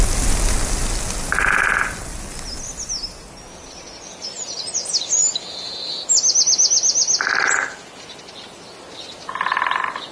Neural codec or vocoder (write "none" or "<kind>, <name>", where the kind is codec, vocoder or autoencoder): none